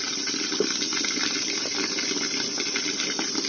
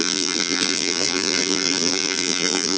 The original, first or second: first